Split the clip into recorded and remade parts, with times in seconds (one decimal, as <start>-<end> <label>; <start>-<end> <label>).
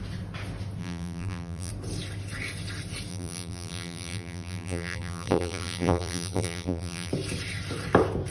0.0-0.8 recorded; 0.8-1.7 remade; 1.7-3.1 recorded; 3.1-7.1 remade; 7.1-8.3 recorded